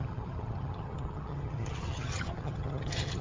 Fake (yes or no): yes